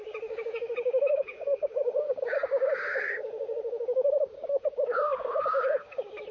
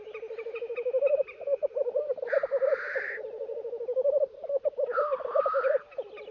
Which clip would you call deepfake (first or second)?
first